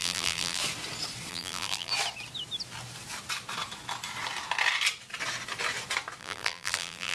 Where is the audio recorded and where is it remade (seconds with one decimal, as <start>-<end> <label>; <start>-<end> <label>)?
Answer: 0.0-0.6 remade; 0.6-1.3 recorded; 1.3-1.9 remade; 1.9-6.2 recorded; 6.2-7.1 remade